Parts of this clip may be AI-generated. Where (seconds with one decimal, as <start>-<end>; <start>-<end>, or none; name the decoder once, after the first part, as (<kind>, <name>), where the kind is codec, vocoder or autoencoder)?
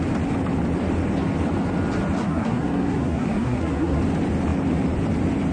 2.2-4.0 (codec, SNAC)